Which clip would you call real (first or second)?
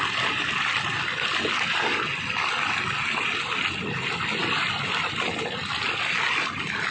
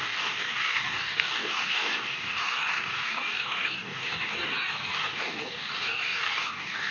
first